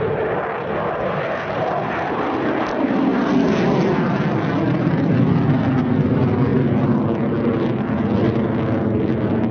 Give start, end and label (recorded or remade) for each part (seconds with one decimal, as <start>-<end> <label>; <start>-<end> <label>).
0.0-9.5 recorded